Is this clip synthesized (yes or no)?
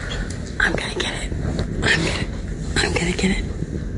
no